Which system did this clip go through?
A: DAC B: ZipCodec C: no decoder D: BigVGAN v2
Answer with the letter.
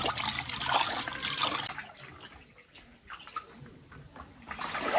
C